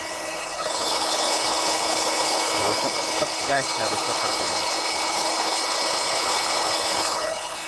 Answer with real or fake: fake